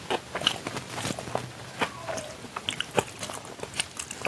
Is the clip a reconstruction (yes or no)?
no